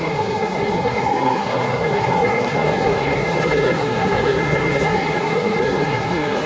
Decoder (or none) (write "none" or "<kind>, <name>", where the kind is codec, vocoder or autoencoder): codec, SNAC